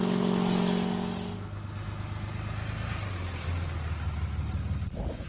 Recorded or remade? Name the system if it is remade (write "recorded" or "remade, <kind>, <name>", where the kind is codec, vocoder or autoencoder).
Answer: recorded